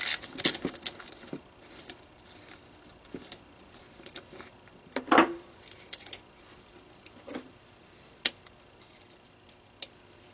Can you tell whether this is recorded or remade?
recorded